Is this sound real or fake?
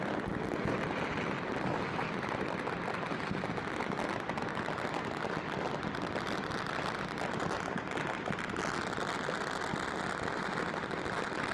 real